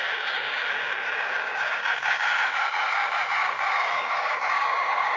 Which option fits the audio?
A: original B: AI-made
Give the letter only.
B